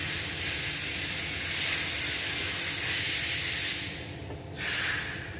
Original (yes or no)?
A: yes